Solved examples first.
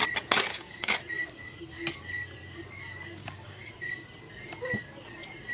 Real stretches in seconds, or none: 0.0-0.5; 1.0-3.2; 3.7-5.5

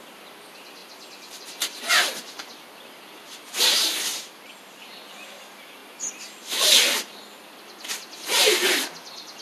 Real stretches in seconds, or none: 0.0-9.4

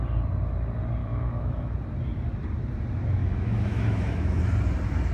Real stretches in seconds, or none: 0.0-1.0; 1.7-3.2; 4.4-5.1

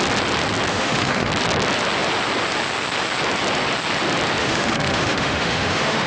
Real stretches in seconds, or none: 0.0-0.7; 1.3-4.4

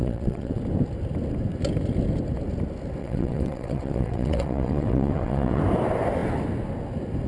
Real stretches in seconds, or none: 0.6-3.0; 5.6-7.3